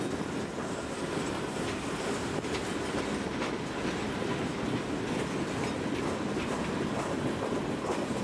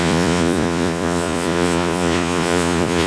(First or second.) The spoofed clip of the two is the second